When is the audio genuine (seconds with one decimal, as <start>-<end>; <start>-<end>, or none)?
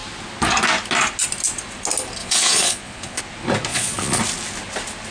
0.0-2.2; 3.2-3.7; 4.2-5.1